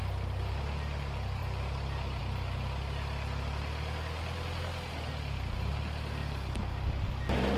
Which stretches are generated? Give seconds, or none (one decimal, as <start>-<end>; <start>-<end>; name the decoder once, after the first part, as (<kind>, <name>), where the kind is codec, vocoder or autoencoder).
none

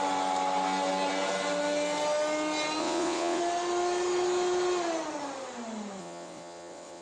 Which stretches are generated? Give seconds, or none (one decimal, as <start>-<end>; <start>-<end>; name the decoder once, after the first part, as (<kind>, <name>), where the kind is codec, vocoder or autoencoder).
2.8-3.4 (vocoder, WaveNeXt); 6.0-7.0

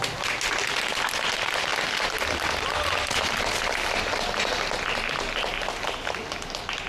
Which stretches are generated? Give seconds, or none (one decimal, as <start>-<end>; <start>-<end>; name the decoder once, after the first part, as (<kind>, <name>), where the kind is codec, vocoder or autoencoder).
none

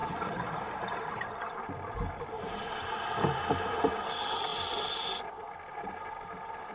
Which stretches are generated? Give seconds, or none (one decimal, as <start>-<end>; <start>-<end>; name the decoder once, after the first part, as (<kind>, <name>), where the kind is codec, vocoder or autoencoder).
0.0-3.9 (vocoder, BigVGAN v2); 4.5-5.9

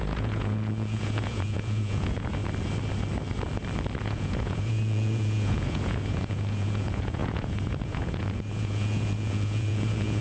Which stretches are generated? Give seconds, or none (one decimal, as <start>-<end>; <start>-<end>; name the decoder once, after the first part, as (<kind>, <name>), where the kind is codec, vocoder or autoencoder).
0.0-2.4 (vocoder, Vocos); 4.0-10.2

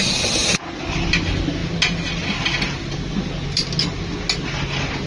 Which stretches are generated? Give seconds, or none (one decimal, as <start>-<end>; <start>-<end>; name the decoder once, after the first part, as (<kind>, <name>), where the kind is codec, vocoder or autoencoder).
none